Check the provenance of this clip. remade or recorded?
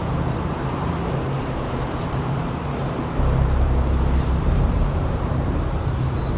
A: remade